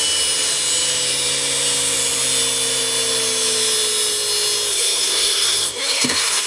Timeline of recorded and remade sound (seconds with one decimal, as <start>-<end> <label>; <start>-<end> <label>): 0.0-4.7 recorded; 4.7-6.5 remade